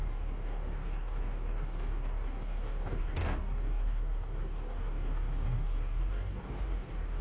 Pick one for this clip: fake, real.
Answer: fake